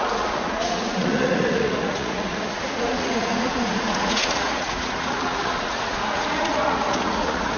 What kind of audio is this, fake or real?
fake